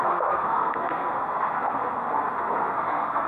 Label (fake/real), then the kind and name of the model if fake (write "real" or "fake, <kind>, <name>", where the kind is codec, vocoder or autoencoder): fake, codec, SNAC